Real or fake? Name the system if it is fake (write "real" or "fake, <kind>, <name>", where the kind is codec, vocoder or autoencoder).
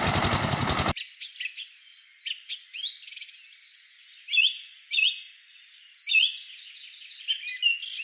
real